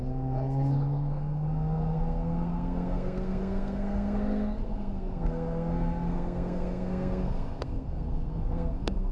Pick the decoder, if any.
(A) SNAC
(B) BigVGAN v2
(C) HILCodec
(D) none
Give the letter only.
A